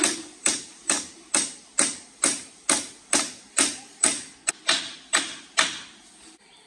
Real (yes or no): yes